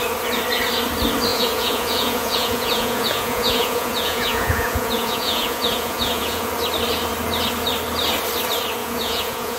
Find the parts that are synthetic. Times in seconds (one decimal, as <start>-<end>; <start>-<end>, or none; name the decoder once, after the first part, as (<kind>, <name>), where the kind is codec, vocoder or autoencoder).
1.3-6.5 (vocoder, Vocos); 8.8-9.6